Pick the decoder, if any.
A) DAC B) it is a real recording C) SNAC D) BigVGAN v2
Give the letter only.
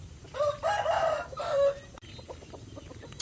D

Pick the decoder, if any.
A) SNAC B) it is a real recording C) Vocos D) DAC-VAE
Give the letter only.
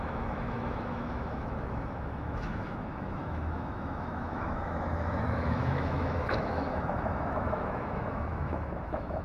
D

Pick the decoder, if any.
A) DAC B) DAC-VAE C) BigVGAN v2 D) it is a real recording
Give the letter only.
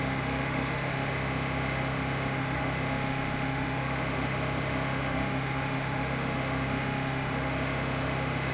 B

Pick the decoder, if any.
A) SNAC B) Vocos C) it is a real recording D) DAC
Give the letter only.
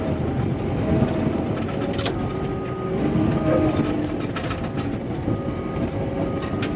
C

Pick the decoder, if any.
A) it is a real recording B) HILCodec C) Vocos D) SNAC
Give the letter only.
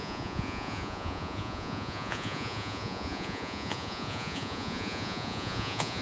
C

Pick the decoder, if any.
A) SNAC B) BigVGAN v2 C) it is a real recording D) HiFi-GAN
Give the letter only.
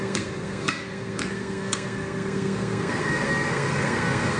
A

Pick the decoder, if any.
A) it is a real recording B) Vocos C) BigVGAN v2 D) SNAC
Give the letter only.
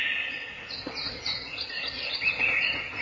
B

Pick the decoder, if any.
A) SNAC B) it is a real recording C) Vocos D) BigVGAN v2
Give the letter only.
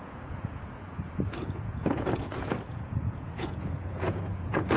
C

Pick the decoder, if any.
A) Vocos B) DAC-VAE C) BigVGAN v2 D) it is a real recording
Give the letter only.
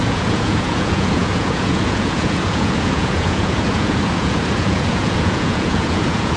A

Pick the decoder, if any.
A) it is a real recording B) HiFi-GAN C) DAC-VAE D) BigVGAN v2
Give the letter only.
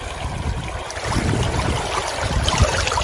A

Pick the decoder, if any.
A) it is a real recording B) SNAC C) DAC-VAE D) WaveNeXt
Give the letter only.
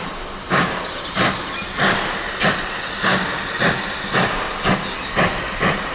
A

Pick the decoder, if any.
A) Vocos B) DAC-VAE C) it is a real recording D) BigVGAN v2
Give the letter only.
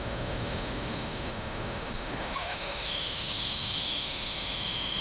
B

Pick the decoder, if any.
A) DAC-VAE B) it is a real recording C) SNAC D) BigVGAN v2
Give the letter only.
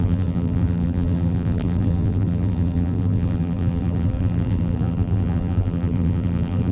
D